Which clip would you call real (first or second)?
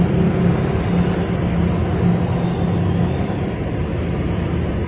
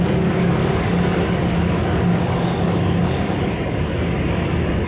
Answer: first